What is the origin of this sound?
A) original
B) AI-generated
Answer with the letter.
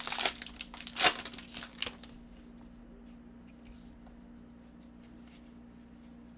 A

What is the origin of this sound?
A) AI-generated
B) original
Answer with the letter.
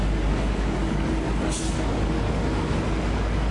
A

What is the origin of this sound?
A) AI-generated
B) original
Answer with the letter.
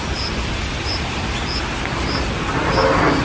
B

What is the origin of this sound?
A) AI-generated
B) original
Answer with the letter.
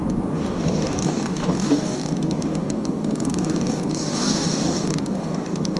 A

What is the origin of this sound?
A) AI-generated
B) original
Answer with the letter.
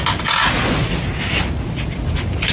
B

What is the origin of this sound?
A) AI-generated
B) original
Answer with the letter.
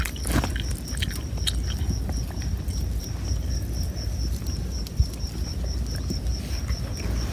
B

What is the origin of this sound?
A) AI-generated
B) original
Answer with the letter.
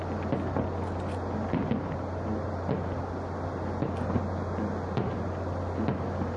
B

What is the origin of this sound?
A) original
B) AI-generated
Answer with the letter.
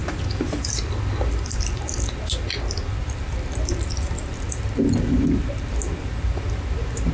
A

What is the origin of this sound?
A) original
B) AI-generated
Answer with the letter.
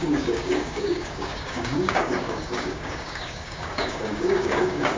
B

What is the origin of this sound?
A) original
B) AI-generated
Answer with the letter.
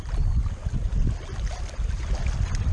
A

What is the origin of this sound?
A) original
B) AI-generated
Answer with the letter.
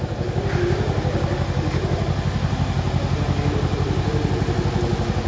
A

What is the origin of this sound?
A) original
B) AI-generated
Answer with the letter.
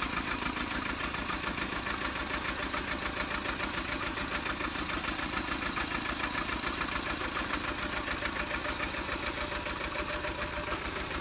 A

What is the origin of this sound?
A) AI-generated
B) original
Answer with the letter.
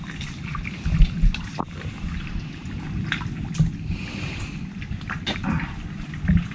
B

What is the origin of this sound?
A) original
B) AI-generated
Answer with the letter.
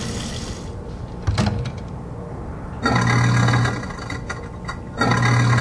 A